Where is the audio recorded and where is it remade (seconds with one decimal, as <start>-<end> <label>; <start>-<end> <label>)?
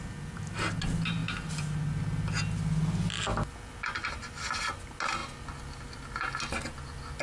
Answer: 0.0-7.2 recorded